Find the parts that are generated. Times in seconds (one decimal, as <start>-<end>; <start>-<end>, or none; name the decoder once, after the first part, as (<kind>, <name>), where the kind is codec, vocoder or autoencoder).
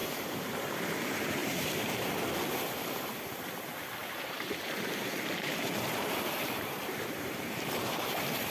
0.0-0.7 (vocoder, BigVGAN v2); 1.4-2.1; 4.0-8.5